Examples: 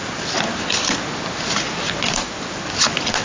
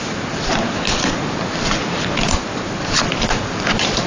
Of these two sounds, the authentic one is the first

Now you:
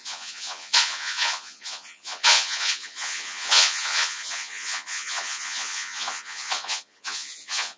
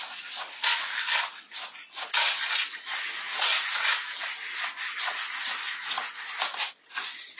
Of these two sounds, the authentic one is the second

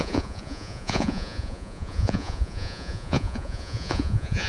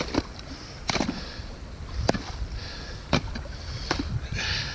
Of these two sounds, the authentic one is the second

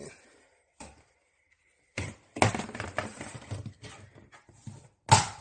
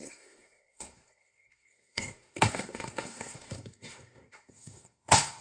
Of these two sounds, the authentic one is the first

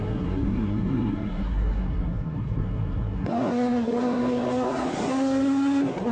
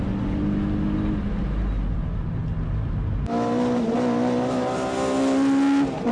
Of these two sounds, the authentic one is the second